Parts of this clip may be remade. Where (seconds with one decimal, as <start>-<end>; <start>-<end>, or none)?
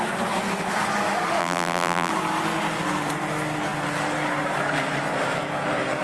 1.4-2.1